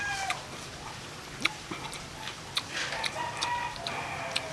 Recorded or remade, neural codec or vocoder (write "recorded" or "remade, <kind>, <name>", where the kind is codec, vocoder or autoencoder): recorded